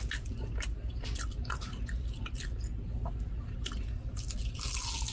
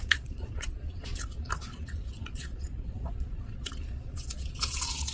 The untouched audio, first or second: first